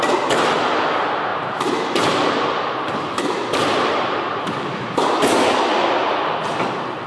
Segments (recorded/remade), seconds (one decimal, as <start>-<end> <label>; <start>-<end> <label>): 0.0-1.3 recorded; 1.3-5.0 remade; 5.0-7.1 recorded